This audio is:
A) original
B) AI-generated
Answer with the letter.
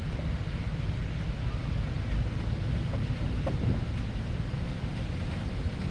A